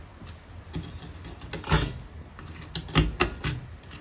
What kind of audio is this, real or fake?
real